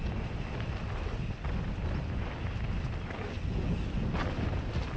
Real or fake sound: real